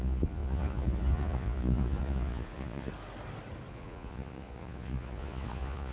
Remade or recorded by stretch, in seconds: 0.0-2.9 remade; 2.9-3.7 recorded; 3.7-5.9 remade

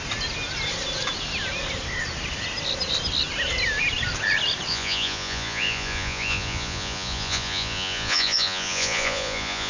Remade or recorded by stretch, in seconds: 0.0-4.7 recorded; 4.7-9.7 remade

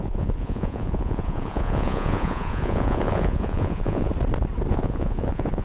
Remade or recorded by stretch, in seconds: 0.0-4.1 remade; 4.1-4.7 recorded; 4.7-5.6 remade

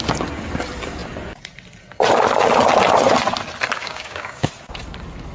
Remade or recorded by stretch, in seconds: 0.0-3.8 recorded; 3.8-4.5 remade; 4.5-5.3 recorded

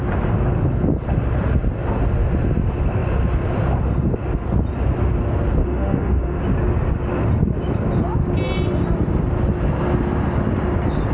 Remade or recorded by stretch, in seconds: 0.0-5.6 recorded; 5.6-6.4 remade; 6.4-11.1 recorded

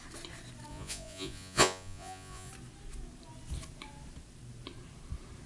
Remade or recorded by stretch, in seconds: 0.0-0.7 recorded; 0.7-2.5 remade; 2.5-5.5 recorded